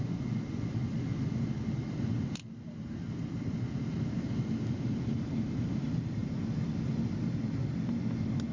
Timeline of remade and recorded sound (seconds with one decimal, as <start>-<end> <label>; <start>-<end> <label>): 0.0-8.5 recorded